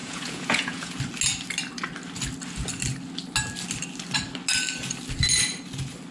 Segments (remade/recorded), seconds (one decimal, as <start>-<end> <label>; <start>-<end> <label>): 0.0-1.0 remade; 1.0-6.1 recorded